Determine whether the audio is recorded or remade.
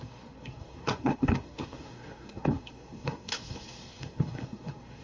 remade